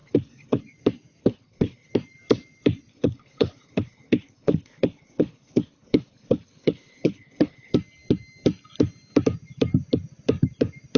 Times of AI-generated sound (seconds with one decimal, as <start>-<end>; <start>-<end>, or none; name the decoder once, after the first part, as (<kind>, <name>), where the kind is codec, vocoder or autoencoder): 0.0-0.6 (codec, HILCodec); 1.2-1.9; 2.9-7.7